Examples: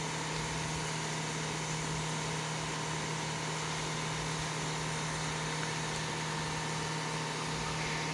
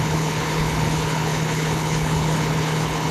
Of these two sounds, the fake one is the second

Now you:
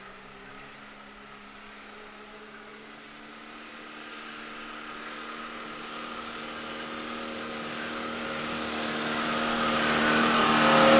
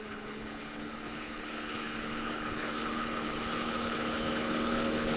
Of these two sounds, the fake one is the second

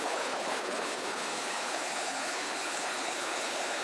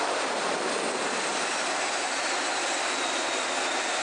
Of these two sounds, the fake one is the first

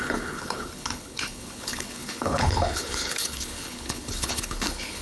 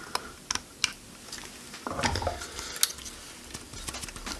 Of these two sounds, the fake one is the first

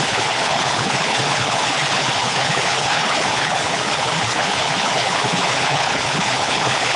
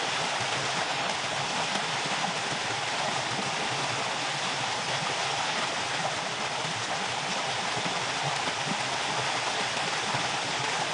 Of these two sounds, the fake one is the first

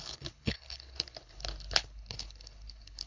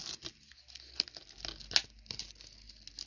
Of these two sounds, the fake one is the first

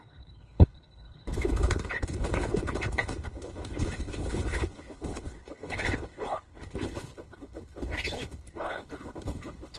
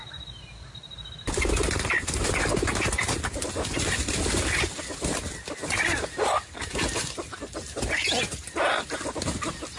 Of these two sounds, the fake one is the first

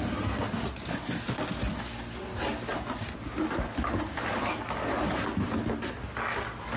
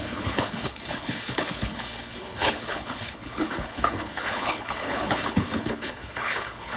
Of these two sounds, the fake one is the second